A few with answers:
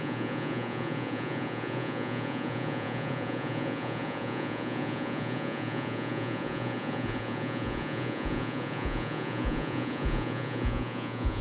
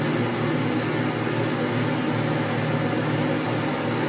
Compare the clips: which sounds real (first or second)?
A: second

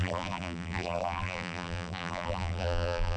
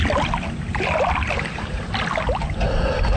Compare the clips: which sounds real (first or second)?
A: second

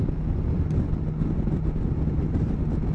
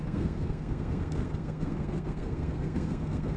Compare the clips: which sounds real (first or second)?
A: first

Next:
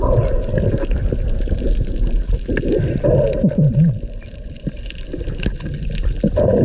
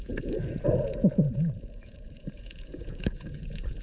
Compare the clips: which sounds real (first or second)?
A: first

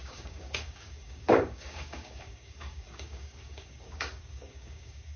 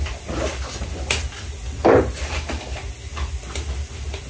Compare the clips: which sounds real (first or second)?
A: second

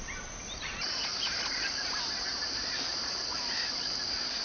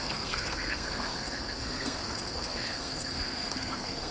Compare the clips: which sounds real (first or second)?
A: first